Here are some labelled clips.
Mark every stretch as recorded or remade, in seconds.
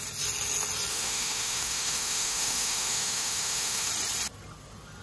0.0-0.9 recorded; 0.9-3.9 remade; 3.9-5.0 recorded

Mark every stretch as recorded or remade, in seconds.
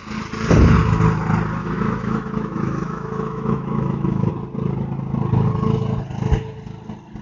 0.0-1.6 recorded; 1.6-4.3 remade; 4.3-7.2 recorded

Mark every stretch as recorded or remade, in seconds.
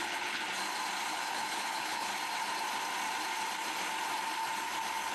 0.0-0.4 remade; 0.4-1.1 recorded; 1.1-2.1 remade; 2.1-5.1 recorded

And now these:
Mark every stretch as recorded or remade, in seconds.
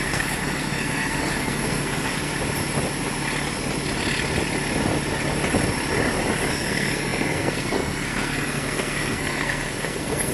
0.0-2.3 remade; 2.3-6.5 recorded; 6.5-10.3 remade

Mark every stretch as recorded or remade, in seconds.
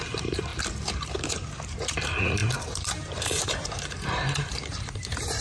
0.0-0.5 remade; 0.5-1.3 recorded; 1.3-5.4 remade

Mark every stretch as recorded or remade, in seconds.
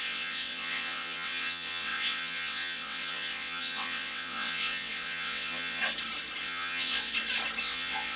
0.0-5.8 remade; 5.8-6.4 recorded; 6.4-7.1 remade; 7.1-7.6 recorded; 7.6-8.2 remade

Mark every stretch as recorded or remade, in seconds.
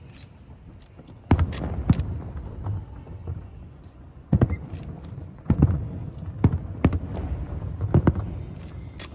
0.0-3.2 recorded; 3.2-4.7 remade; 4.7-5.2 recorded; 5.2-5.8 remade; 5.8-9.1 recorded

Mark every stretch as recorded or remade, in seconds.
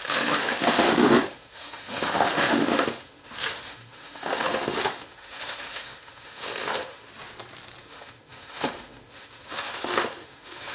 0.0-7.1 remade; 7.1-7.8 recorded; 7.8-10.7 remade